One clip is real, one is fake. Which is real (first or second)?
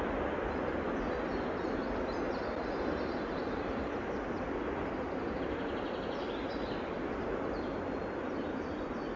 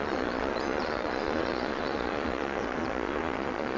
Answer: first